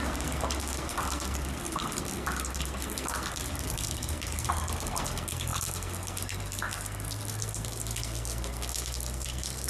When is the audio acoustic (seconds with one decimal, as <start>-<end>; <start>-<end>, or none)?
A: none